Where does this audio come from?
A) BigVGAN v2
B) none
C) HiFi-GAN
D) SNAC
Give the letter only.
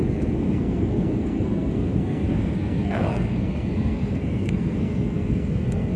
D